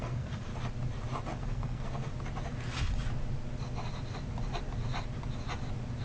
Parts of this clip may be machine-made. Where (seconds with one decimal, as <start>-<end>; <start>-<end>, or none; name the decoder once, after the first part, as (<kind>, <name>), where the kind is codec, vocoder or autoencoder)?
0.0-0.5 (codec, SNAC); 1.4-2.1